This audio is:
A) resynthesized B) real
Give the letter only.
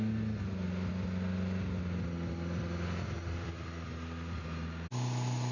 B